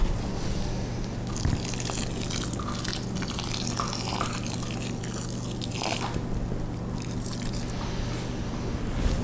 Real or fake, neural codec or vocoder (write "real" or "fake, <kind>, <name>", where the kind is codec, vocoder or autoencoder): real